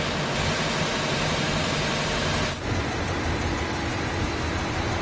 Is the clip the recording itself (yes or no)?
yes